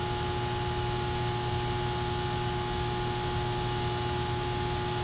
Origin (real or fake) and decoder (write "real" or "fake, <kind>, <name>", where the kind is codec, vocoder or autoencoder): real